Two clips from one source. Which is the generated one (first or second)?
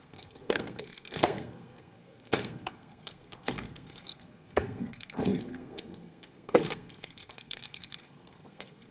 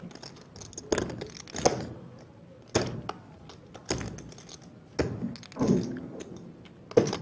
first